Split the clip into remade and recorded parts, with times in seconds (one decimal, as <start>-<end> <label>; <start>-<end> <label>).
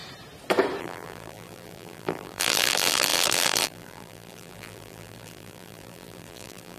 0.0-0.8 recorded; 0.8-6.8 remade